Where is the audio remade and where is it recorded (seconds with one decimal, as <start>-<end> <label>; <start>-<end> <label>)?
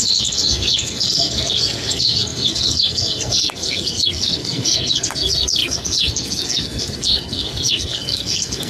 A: 0.0-8.7 remade